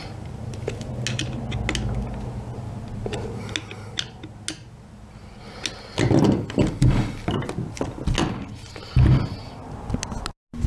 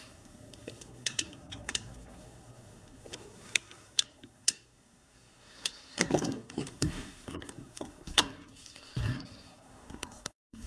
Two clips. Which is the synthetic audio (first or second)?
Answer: second